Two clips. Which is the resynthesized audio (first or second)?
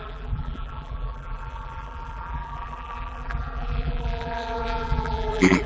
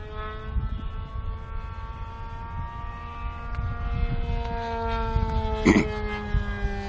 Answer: first